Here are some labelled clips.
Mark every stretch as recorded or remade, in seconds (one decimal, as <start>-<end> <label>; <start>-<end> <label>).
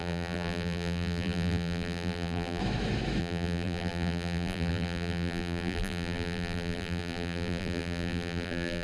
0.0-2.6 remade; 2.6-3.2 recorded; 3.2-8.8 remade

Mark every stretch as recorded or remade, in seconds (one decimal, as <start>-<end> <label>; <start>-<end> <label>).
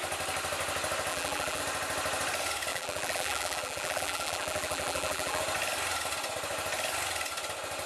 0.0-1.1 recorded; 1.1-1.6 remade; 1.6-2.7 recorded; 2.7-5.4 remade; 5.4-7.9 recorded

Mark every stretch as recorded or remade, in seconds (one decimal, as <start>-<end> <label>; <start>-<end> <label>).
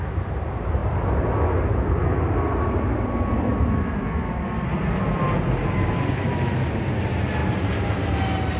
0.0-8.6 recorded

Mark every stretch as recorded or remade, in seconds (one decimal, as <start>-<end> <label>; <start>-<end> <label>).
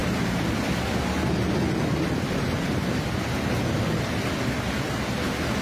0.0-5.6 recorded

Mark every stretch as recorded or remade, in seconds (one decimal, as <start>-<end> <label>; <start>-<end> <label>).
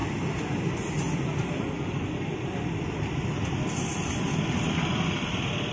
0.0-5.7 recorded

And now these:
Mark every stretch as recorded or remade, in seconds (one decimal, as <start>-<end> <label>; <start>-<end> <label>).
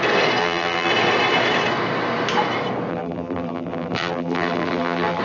0.0-0.4 recorded; 0.4-0.9 remade; 0.9-2.9 recorded; 2.9-5.2 remade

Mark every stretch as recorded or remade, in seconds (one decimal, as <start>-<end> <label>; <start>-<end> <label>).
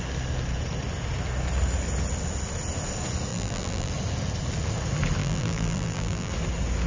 0.0-3.3 recorded; 3.3-3.9 remade; 3.9-5.2 recorded; 5.2-6.3 remade; 6.3-6.9 recorded